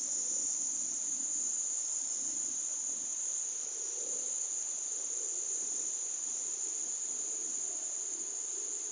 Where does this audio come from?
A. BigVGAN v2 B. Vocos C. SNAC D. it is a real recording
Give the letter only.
D